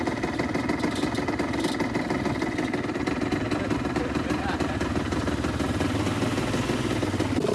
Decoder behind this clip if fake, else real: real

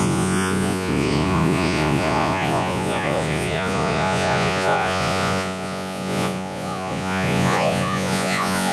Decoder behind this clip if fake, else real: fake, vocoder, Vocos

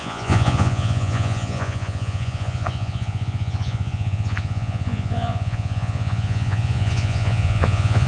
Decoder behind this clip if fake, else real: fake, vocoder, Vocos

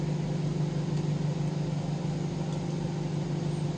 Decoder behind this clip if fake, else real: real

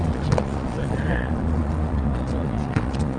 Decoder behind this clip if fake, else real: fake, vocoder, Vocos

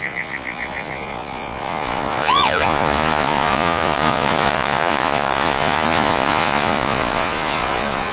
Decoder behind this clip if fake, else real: fake, vocoder, Vocos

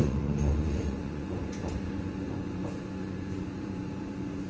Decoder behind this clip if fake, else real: fake, vocoder, Vocos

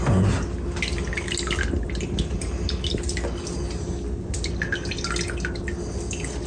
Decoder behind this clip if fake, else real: real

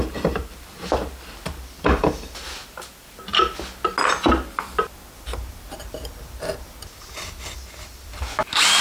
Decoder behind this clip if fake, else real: real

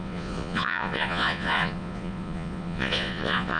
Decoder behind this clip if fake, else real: fake, vocoder, Vocos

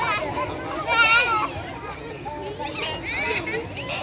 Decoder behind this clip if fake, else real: real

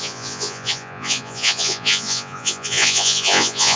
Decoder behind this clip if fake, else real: fake, vocoder, Vocos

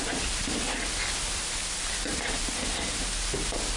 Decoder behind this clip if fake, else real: real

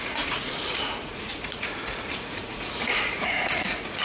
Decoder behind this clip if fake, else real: fake, vocoder, Vocos